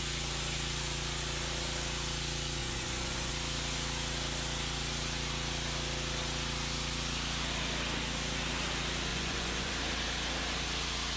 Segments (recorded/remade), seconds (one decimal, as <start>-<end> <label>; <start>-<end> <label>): 0.0-2.6 recorded; 2.6-3.3 remade; 3.3-9.1 recorded; 9.1-9.7 remade; 9.7-11.2 recorded